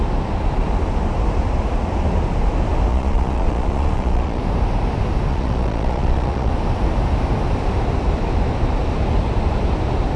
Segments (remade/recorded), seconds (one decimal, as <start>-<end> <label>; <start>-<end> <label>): 0.0-2.9 recorded; 2.9-4.4 remade; 4.4-5.3 recorded; 5.3-6.5 remade; 6.5-10.2 recorded